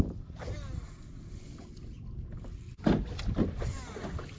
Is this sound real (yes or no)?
yes